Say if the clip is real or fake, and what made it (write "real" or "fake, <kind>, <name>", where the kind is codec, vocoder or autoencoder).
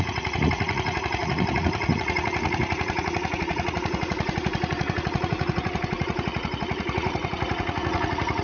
fake, vocoder, Vocos